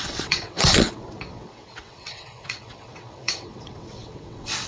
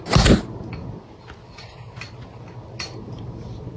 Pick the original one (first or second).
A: second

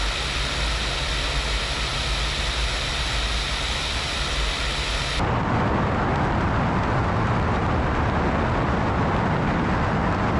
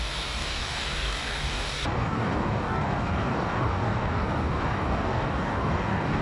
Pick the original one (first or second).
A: first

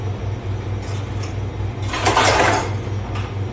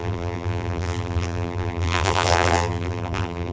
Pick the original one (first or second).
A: first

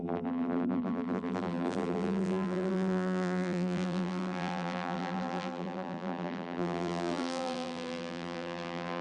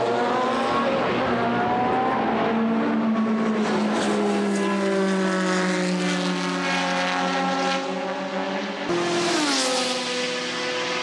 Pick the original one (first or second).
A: second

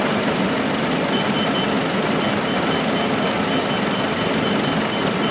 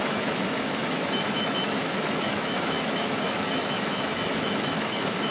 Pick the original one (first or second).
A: first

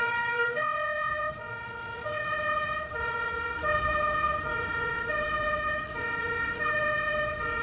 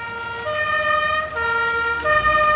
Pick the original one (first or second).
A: second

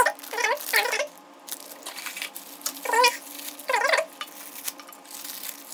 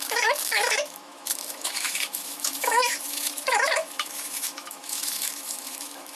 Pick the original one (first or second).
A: first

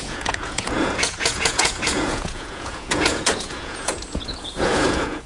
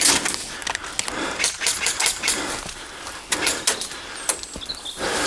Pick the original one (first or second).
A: second